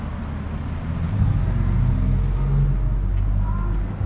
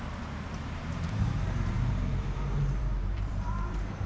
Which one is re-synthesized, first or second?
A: second